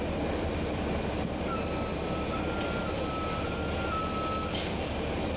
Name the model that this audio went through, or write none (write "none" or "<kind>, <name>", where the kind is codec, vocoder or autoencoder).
none